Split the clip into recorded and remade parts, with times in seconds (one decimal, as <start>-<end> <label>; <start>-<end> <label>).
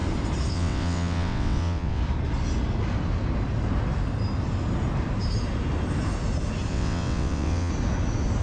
0.0-0.5 recorded; 0.5-2.0 remade; 2.0-6.7 recorded; 6.7-7.7 remade; 7.7-8.4 recorded